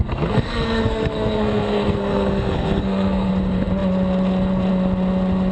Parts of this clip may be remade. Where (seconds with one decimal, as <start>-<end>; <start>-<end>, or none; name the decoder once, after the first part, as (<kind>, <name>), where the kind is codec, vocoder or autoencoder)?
0.0-3.3 (codec, SNAC)